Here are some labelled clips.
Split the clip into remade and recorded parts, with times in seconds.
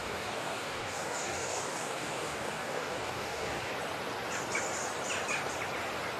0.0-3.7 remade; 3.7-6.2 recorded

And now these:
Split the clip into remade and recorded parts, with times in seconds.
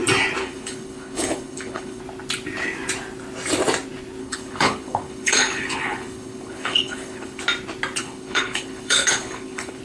0.0-0.4 recorded; 0.4-2.0 remade; 2.0-4.2 recorded; 4.2-7.4 remade; 7.4-8.0 recorded; 8.0-9.8 remade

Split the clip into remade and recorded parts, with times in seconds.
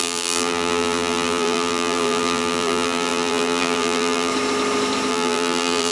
0.0-4.3 remade; 4.3-5.1 recorded; 5.1-5.9 remade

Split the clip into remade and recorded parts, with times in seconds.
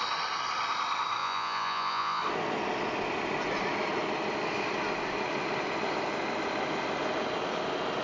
0.0-1.2 recorded; 1.2-2.2 remade; 2.2-8.0 recorded